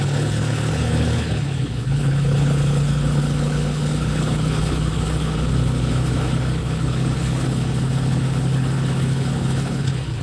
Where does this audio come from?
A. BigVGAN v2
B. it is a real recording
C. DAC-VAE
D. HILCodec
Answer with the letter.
D